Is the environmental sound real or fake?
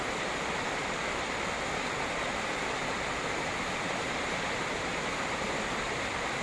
real